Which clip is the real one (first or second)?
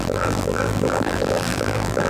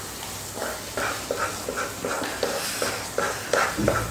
second